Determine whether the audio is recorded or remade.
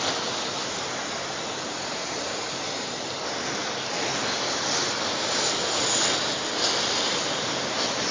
recorded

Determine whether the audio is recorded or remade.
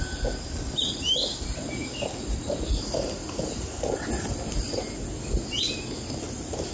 recorded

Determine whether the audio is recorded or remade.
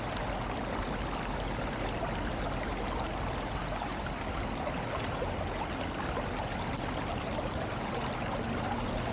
recorded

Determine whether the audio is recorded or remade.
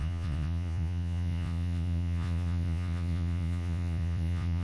remade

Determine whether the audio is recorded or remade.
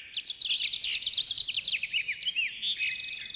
recorded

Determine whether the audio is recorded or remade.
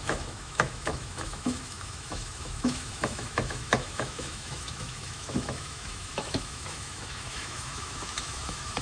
remade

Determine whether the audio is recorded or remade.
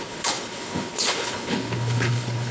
remade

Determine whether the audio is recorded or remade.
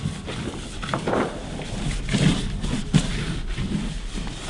recorded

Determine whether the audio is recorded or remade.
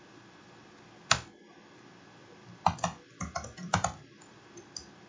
recorded